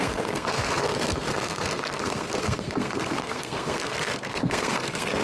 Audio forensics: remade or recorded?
remade